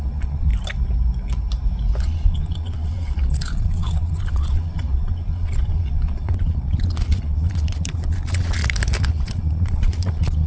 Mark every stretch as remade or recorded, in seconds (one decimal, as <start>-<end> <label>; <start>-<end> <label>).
0.0-0.5 remade; 0.5-2.0 recorded; 2.0-8.6 remade; 8.6-9.1 recorded; 9.1-10.5 remade